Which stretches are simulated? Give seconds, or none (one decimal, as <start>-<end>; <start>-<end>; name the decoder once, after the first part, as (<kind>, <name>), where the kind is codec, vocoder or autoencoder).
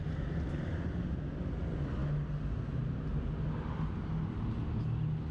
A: none